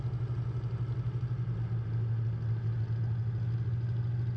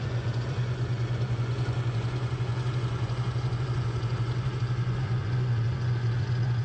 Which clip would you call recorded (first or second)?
first